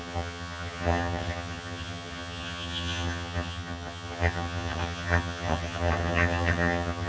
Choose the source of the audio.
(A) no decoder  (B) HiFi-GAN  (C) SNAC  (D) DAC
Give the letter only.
B